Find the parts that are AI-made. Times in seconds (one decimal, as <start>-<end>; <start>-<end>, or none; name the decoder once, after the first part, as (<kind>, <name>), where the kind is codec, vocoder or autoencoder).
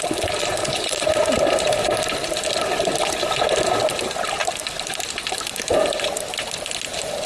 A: 0.4-1.1 (vocoder, Vocos)